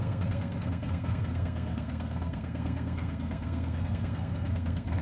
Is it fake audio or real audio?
fake